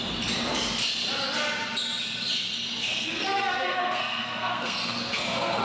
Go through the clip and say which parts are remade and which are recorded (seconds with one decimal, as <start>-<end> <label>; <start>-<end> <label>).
0.0-2.8 recorded; 2.8-5.6 remade